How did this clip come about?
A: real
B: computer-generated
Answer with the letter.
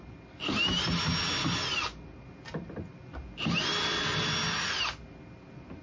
A